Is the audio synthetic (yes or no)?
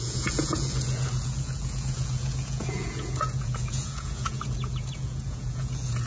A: yes